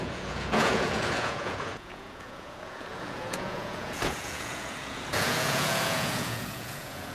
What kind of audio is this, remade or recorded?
remade